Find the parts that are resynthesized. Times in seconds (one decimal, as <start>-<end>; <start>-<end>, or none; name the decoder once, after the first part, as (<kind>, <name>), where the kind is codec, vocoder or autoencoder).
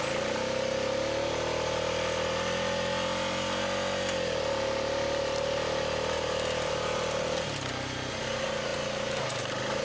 none